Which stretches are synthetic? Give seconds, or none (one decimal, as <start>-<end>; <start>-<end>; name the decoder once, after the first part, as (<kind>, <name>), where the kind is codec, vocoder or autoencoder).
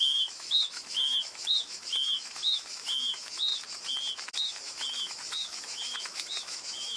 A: 0.0-3.5 (autoencoder, DAC-VAE); 4.3-7.0